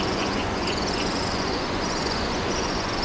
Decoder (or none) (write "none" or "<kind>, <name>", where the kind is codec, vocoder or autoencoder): vocoder, Vocos